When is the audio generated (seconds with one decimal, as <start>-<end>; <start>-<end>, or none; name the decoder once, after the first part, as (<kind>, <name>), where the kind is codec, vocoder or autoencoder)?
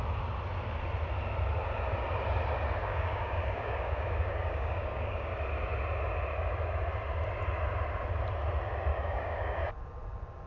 2.8-5.3 (codec, DAC); 8.9-9.7